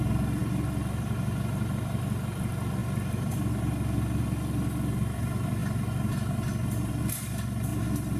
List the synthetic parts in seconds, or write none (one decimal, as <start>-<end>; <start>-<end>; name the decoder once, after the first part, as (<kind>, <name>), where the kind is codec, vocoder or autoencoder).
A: none